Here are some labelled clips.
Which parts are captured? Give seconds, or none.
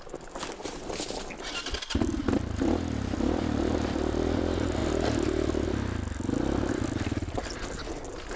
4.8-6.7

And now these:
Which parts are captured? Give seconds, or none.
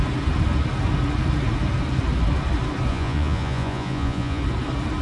0.0-2.9; 4.4-5.0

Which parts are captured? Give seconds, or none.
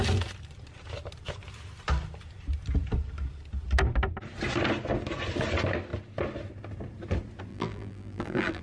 0.0-7.5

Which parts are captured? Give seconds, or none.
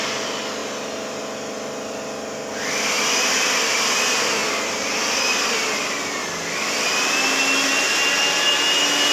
0.0-9.1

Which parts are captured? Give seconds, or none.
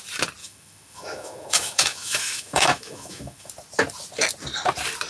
0.0-0.4; 3.5-5.1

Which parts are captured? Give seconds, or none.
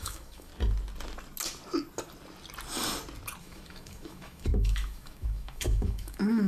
0.5-3.4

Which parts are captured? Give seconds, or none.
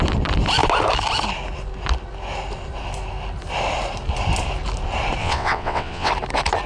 0.0-5.2; 6.1-6.7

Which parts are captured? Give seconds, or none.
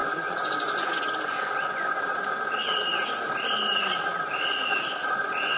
1.9-5.0